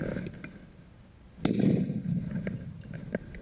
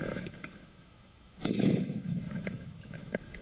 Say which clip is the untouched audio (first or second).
first